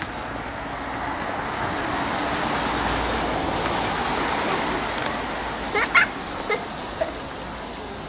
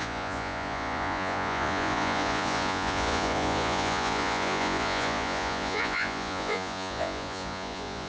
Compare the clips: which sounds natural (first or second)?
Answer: first